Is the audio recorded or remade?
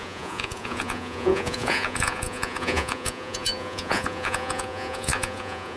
remade